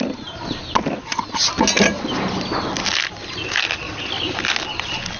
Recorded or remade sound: recorded